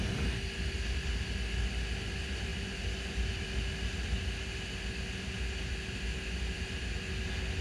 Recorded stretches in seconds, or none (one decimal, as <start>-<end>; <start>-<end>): 0.0-7.6